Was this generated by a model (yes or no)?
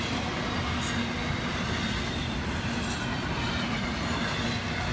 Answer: no